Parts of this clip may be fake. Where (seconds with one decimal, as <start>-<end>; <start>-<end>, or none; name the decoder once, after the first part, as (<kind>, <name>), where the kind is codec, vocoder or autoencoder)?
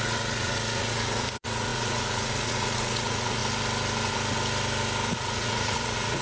0.0-3.4 (vocoder, Vocos); 5.1-6.2